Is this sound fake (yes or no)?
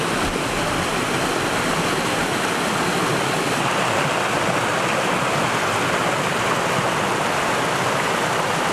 no